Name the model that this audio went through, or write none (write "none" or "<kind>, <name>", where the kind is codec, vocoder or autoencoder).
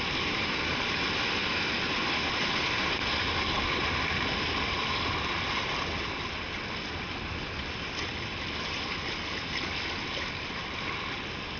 none